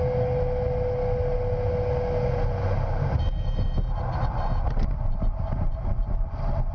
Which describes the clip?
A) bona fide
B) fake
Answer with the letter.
A